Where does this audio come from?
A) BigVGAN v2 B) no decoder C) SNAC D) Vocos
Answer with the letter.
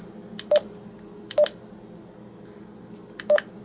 B